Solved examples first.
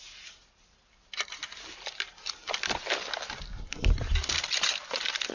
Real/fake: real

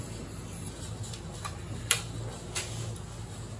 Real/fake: real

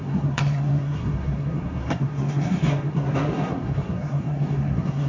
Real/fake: fake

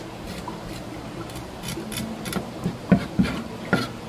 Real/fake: real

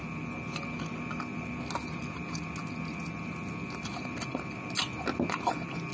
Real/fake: real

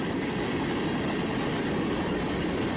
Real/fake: real